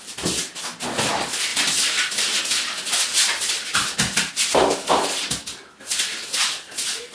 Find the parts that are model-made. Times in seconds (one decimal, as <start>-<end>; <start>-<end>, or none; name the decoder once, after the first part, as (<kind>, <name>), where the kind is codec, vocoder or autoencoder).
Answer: 1.5-2.4 (vocoder, BigVGAN v2); 3.1-4.3